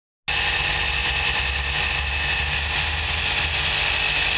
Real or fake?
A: real